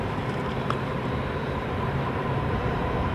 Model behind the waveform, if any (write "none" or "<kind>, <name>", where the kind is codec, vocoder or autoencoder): vocoder, BigVGAN v2